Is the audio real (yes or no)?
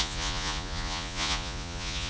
no